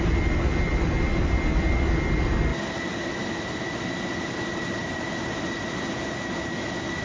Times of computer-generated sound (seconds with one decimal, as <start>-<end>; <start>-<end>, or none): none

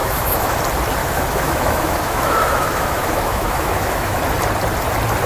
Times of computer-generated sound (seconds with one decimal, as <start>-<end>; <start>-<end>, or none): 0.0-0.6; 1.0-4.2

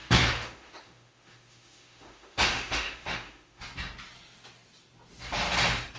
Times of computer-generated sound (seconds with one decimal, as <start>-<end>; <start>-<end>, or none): 0.0-3.6

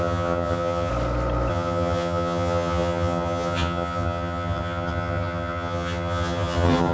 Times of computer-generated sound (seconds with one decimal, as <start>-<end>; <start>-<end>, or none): 0.0-0.9; 1.5-6.9

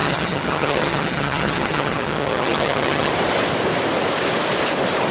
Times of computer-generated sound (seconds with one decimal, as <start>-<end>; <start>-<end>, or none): 0.0-3.1